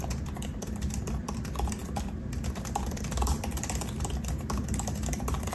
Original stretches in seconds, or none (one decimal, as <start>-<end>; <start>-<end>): 0.0-5.5

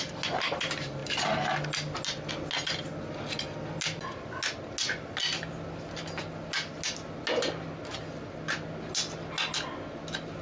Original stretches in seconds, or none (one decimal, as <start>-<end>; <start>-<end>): 0.0-10.4

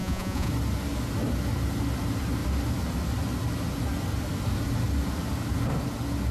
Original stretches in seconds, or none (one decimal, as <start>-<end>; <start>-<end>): 0.5-6.3